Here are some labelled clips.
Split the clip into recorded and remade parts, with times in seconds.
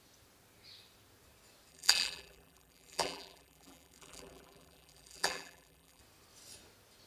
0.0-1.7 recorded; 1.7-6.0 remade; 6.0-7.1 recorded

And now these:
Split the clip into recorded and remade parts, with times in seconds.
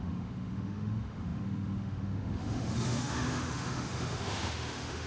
0.0-5.1 remade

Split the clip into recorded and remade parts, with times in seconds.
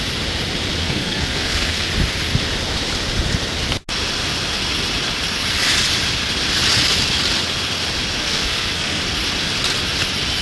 0.0-0.8 recorded; 0.8-1.9 remade; 1.9-8.2 recorded; 8.2-9.0 remade; 9.0-10.4 recorded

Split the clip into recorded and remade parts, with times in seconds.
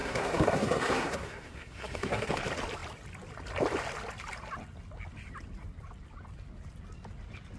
0.0-2.3 remade; 2.3-7.6 recorded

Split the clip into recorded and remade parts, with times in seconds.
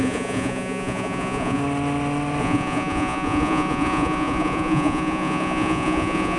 0.0-1.6 remade; 1.6-2.4 recorded; 2.4-6.4 remade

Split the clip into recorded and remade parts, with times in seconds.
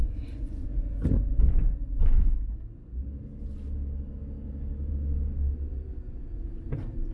0.0-0.7 remade; 0.7-7.1 recorded